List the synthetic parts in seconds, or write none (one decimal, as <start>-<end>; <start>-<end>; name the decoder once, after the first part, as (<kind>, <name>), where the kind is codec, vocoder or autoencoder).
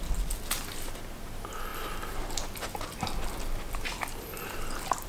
none